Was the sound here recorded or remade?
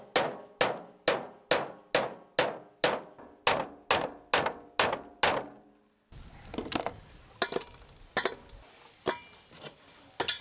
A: recorded